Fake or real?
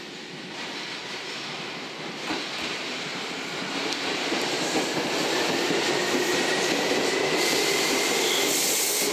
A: real